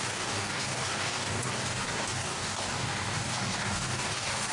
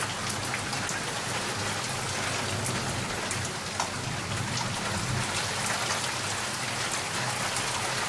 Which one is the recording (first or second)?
second